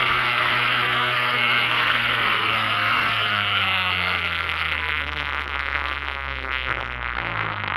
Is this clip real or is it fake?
fake